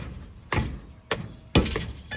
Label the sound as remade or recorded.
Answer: recorded